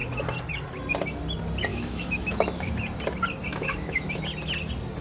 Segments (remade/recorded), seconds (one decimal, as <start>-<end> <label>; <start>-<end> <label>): 0.0-1.7 recorded; 1.7-2.7 remade; 2.7-3.5 recorded; 3.5-4.2 remade; 4.2-5.0 recorded